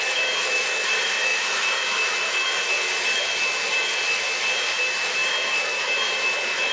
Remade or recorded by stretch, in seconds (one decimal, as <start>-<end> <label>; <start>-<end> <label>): 0.0-6.7 remade